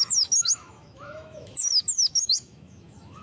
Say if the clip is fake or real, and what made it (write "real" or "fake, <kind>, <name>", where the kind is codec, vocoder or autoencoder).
fake, autoencoder, DAC-VAE